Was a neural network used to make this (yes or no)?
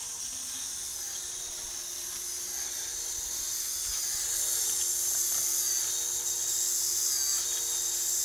no